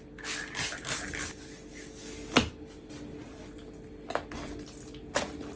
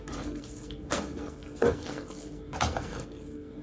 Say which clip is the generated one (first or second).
second